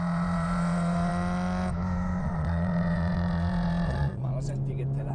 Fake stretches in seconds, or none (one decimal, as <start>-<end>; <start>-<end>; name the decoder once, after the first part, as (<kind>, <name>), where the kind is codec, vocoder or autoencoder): 0.0-1.1 (vocoder, Vocos); 2.2-4.3